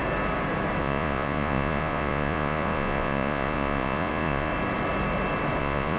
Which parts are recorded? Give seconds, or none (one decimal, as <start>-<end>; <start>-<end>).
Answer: 0.0-0.8; 4.5-5.6